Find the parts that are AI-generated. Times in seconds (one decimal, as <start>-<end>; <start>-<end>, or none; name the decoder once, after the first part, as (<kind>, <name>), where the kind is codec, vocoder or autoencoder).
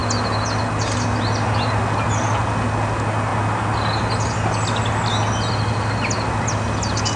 none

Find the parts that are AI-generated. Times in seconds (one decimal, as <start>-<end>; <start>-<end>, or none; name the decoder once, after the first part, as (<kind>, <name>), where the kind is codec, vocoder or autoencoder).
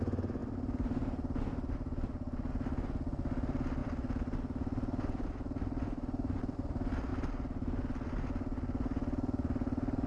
none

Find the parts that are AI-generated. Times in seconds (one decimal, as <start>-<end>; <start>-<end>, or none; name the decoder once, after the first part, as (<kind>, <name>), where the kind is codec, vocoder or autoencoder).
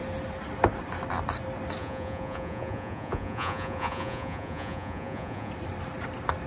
1.8-5.5 (vocoder, Vocos)